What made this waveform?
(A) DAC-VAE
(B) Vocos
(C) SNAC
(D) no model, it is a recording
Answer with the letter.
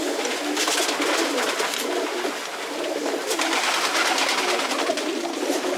D